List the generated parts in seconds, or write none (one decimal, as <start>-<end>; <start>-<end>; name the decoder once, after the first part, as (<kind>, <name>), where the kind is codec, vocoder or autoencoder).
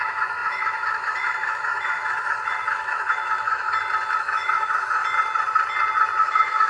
0.0-3.7 (autoencoder, DAC-VAE); 4.2-5.0; 6.2-6.7